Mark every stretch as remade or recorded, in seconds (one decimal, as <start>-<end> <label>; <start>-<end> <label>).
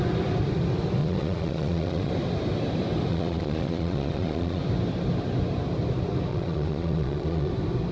0.0-1.0 recorded; 1.0-2.1 remade; 2.1-3.1 recorded; 3.1-4.6 remade; 4.6-6.3 recorded; 6.3-7.5 remade; 7.5-7.9 recorded